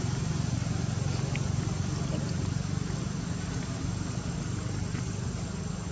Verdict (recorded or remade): recorded